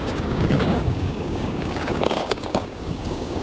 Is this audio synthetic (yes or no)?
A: yes